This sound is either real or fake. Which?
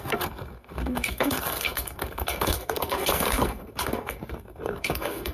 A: fake